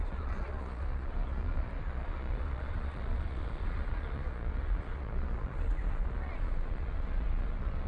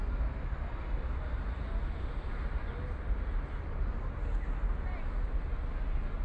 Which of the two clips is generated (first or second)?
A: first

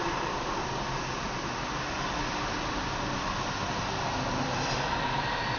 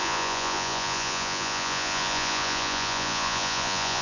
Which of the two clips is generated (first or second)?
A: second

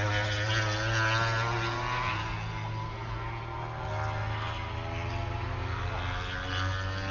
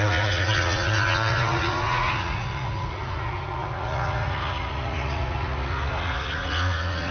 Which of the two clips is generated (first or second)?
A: second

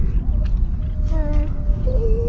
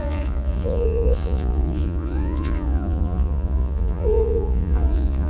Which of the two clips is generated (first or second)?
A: second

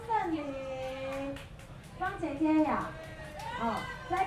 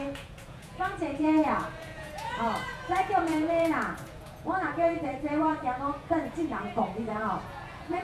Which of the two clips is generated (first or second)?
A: second